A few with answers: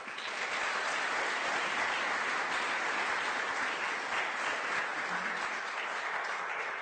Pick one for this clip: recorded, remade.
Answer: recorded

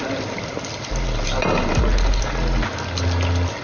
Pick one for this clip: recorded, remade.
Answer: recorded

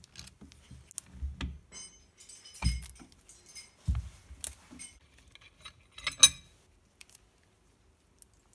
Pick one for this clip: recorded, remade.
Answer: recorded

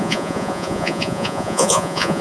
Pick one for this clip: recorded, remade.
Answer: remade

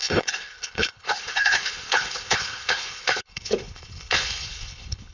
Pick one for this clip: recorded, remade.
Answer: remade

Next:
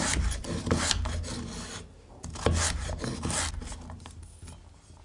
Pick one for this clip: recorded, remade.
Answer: recorded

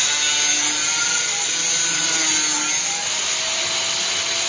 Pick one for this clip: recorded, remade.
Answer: recorded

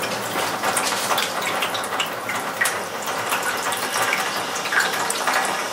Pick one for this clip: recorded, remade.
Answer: remade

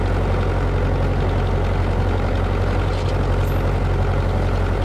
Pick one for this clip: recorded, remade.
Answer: recorded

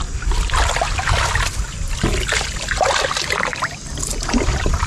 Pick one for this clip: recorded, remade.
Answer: recorded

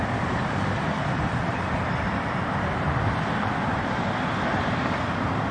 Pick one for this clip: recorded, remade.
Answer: remade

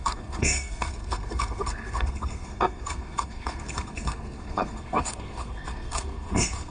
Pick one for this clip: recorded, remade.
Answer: remade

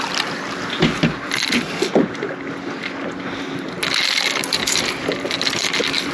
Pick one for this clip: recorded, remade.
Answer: recorded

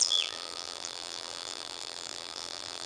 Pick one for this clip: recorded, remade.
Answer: remade